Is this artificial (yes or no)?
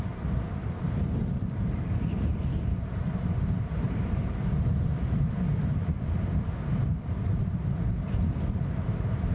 yes